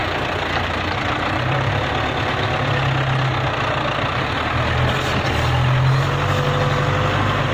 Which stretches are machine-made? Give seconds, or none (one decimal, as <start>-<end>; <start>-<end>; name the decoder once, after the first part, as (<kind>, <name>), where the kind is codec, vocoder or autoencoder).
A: 0.0-1.7 (vocoder, BigVGAN v2)